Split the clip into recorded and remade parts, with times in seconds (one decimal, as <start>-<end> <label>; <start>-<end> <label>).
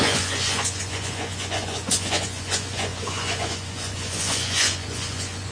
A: 0.0-5.5 remade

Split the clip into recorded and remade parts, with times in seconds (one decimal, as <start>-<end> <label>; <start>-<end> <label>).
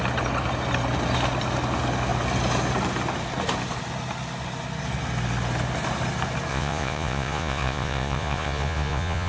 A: 0.0-6.5 recorded; 6.5-9.3 remade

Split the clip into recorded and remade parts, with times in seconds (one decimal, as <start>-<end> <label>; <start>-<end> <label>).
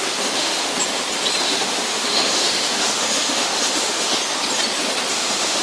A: 0.0-0.7 remade; 0.7-1.4 recorded; 1.4-4.2 remade; 4.2-5.1 recorded; 5.1-5.6 remade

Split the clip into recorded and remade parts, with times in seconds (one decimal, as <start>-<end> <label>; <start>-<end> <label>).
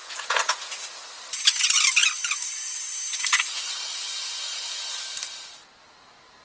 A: 0.0-0.7 remade; 0.7-6.4 recorded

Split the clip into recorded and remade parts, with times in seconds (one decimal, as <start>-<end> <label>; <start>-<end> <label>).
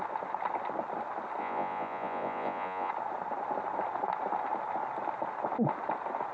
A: 0.0-1.4 recorded; 1.4-2.9 remade; 2.9-6.3 recorded